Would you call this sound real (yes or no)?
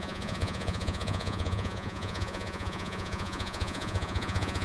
no